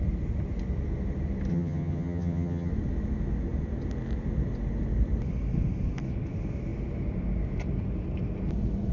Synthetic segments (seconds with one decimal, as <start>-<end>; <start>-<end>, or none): 1.5-2.7